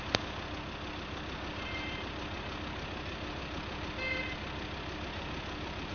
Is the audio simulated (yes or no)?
no